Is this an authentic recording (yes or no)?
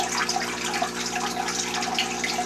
yes